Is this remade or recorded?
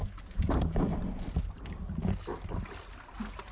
recorded